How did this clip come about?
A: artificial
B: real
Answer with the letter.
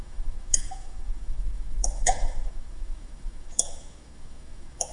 A